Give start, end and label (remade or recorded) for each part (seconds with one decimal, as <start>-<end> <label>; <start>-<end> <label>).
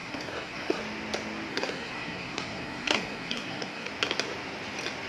0.0-0.8 remade; 0.8-1.5 recorded; 1.5-3.9 remade; 3.9-5.1 recorded